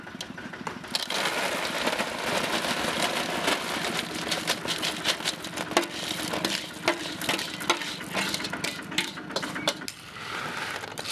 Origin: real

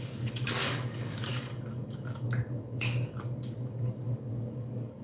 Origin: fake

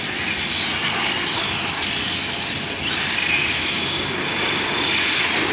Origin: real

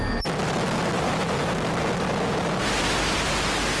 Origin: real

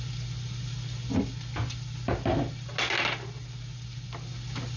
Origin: real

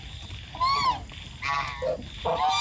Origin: real